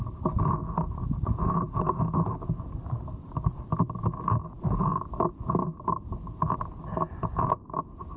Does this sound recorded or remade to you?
recorded